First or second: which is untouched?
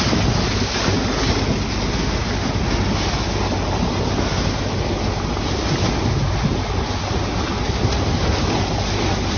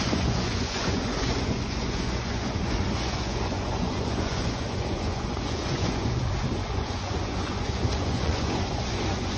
first